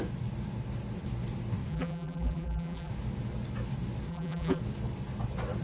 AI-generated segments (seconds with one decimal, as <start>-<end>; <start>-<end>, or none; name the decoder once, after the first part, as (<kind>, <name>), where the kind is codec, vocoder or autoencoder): 1.7-2.9 (vocoder, BigVGAN v2); 4.1-4.6